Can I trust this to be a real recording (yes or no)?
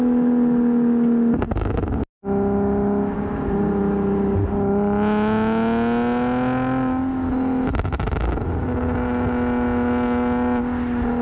yes